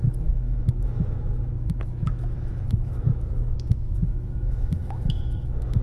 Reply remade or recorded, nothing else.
remade